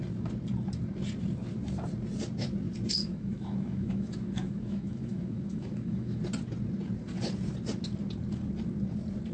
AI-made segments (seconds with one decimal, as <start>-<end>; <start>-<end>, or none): 3.0-6.2